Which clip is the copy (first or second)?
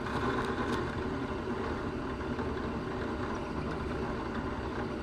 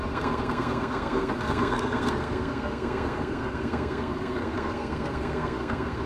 second